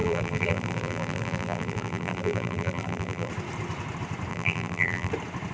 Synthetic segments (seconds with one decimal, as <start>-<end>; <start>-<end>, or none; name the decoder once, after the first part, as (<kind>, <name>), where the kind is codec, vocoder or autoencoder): 0.0-3.3 (vocoder, BigVGAN v2); 4.3-5.1